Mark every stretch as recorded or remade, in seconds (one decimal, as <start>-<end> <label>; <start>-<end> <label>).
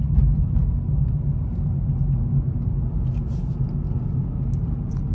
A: 0.0-5.1 recorded